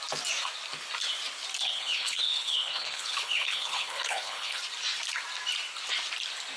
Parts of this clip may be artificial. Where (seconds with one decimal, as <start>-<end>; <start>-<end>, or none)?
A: 1.6-4.6